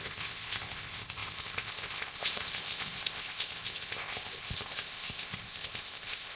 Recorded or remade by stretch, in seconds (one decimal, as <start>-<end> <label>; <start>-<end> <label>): 0.0-6.4 remade